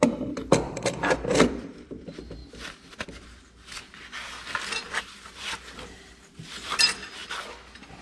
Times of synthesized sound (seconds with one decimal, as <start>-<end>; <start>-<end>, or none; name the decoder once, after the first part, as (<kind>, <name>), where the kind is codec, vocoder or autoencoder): 0.0-2.4 (vocoder, BigVGAN v2); 4.9-7.2

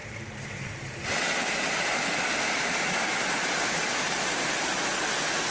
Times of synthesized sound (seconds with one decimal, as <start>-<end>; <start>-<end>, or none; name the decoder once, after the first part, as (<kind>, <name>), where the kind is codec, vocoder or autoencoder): none

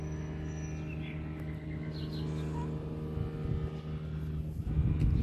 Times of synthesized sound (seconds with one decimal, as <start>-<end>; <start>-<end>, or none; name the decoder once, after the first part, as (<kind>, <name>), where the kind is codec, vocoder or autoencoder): none